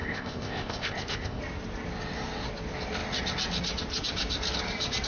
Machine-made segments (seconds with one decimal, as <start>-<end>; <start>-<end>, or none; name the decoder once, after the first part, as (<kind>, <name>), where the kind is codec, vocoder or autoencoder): 0.0-1.4 (codec, ZipCodec)